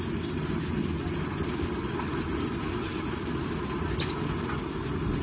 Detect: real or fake real